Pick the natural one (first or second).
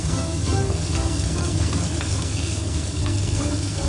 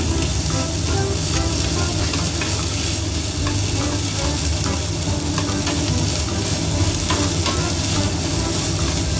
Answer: second